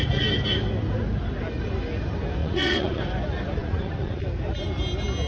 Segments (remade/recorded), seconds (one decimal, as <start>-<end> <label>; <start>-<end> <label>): 0.0-2.4 recorded; 2.4-3.0 remade; 3.0-3.6 recorded; 3.6-4.2 remade; 4.2-5.3 recorded